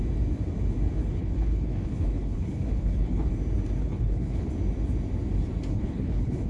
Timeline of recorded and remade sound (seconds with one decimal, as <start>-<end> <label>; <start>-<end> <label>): 0.0-1.2 recorded; 1.2-3.3 remade; 3.3-3.8 recorded; 3.8-4.5 remade; 4.5-5.7 recorded; 5.7-6.5 remade